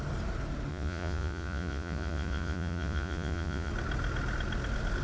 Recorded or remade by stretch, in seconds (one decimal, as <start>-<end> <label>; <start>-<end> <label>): 0.0-0.7 recorded; 0.7-3.7 remade; 3.7-5.0 recorded